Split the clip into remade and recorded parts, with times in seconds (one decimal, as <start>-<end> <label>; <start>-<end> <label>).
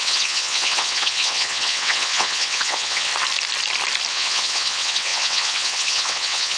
0.0-3.1 remade; 3.1-4.1 recorded; 4.1-6.6 remade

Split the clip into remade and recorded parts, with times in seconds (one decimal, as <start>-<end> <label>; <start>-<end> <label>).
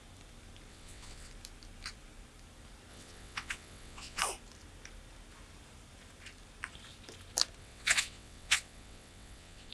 0.0-0.7 recorded; 0.7-1.3 remade; 1.3-2.9 recorded; 2.9-4.2 remade; 4.2-7.6 recorded; 7.6-9.7 remade